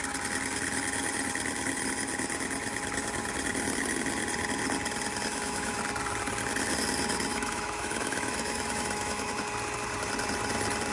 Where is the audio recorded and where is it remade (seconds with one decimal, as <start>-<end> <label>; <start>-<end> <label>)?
0.0-5.3 recorded; 5.3-5.8 remade; 5.8-7.3 recorded; 7.3-9.3 remade; 9.3-10.9 recorded